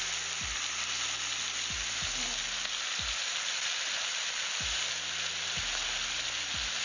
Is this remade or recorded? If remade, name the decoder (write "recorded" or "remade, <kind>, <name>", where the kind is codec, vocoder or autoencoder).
recorded